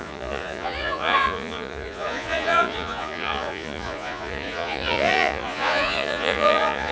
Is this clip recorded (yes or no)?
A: no